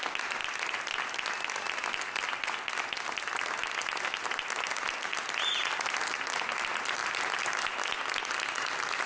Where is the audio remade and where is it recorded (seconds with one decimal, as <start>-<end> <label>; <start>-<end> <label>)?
0.0-9.1 recorded